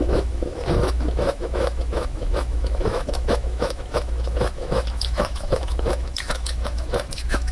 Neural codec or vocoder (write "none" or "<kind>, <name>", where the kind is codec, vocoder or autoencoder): autoencoder, DAC-VAE